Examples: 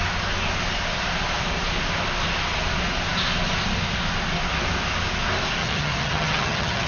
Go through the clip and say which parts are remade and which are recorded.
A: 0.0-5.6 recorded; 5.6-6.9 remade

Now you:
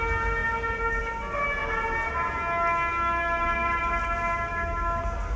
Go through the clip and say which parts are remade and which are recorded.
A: 0.0-4.5 recorded; 4.5-5.0 remade; 5.0-5.4 recorded

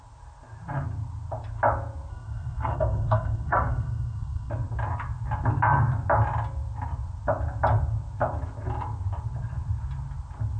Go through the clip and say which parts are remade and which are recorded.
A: 0.0-2.1 recorded; 2.1-4.5 remade; 4.5-10.6 recorded